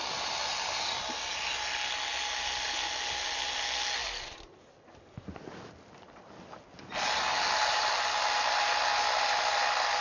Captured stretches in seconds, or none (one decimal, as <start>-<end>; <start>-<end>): 0.0-10.0